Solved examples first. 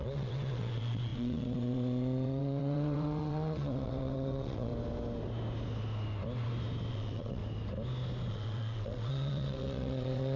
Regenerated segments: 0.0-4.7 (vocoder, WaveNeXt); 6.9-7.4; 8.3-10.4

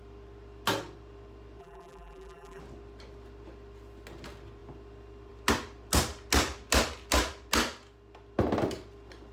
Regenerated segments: 1.6-2.6 (vocoder, BigVGAN v2)

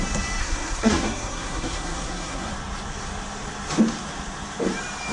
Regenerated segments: 0.4-2.5 (codec, SNAC)

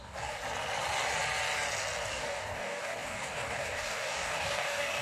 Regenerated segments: 0.0-0.4 (codec, DAC); 2.1-5.0